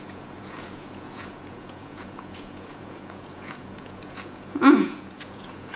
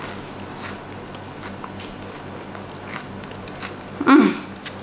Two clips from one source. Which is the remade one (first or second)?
first